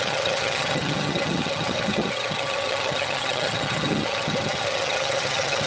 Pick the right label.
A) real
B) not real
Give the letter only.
B